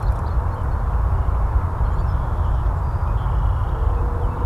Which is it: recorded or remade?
recorded